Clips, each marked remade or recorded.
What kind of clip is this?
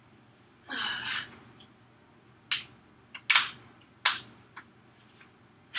recorded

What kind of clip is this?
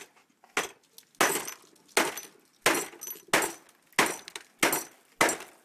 recorded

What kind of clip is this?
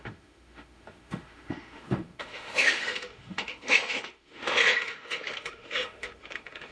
remade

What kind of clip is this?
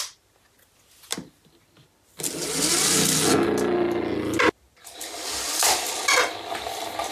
recorded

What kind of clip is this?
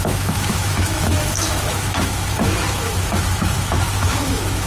remade